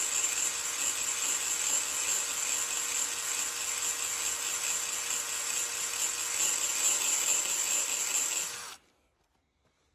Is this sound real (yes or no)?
yes